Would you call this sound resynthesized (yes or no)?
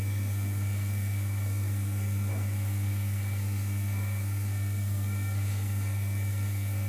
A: yes